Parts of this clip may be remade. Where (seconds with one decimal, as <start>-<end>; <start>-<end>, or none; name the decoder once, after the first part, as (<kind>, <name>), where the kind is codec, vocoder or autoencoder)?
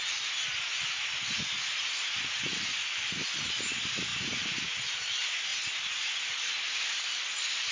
none